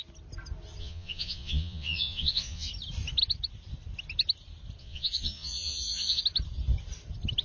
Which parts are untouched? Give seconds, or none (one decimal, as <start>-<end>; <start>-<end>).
0.0-0.8; 2.7-4.8; 6.2-7.4